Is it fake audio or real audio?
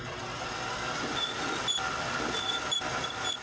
real